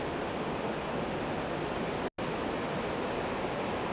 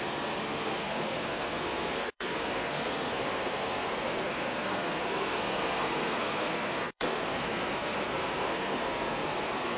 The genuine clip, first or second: first